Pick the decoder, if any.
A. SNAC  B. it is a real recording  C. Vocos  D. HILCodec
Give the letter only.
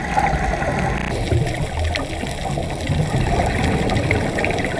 B